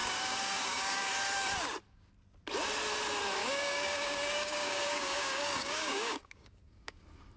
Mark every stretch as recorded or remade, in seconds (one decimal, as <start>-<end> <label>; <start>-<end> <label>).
0.0-1.1 remade; 1.1-3.4 recorded; 3.4-7.0 remade; 7.0-7.4 recorded